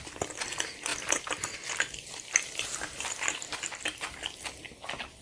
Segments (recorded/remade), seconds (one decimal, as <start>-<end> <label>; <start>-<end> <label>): 0.0-0.9 recorded; 0.9-4.0 remade; 4.0-5.2 recorded